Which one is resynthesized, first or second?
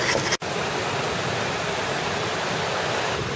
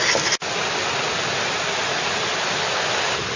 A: first